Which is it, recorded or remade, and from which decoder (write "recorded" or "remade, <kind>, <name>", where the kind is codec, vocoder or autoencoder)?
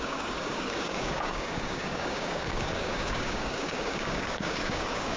remade, codec, DAC